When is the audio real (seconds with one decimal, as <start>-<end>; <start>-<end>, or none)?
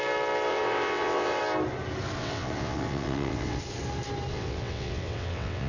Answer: 0.0-0.5; 1.4-2.2; 3.6-4.3